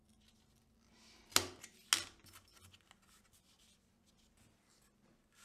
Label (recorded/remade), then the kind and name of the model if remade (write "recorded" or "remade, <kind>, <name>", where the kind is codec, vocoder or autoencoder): recorded